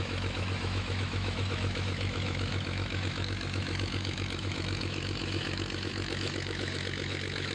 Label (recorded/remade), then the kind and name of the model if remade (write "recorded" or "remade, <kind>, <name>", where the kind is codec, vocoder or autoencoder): remade, autoencoder, DAC-VAE